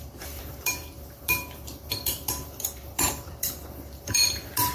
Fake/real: fake